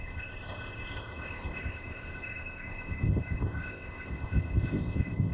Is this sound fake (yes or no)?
yes